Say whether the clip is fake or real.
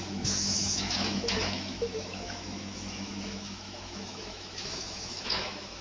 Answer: fake